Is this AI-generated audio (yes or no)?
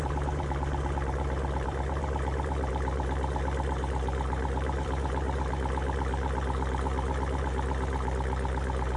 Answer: yes